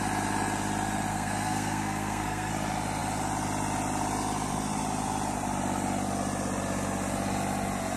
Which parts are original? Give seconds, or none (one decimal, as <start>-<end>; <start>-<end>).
0.0-1.1; 2.5-8.0